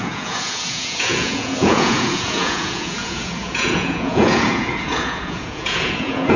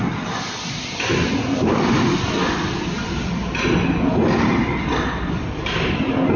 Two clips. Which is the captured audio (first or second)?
second